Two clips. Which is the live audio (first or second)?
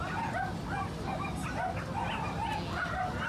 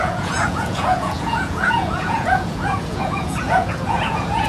first